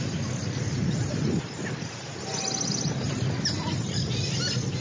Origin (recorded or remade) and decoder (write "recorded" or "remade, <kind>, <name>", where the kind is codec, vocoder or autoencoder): recorded